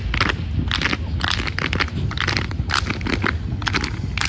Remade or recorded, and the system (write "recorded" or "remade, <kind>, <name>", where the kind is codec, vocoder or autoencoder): recorded